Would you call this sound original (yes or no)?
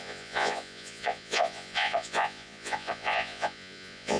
no